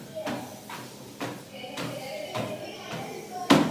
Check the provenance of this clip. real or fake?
real